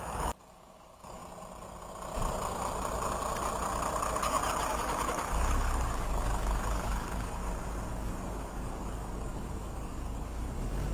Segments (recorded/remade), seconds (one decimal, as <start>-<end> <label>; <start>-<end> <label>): 0.0-1.2 remade; 1.2-4.7 recorded; 4.7-7.4 remade; 7.4-7.9 recorded; 7.9-10.9 remade